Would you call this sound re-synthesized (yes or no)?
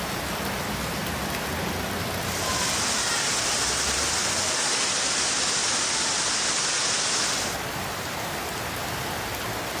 no